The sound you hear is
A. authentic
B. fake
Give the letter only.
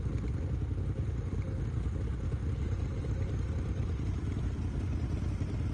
A